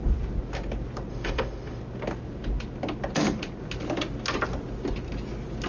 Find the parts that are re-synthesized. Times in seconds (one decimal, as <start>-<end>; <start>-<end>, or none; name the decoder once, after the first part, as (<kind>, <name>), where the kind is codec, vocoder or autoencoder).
1.1-1.8 (autoencoder, DAC-VAE)